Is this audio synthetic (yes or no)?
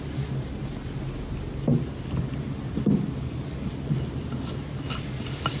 no